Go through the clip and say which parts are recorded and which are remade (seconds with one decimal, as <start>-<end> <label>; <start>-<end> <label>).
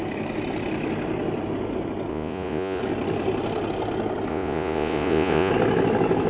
0.0-2.1 recorded; 2.1-2.8 remade; 2.8-4.3 recorded; 4.3-5.5 remade; 5.5-6.3 recorded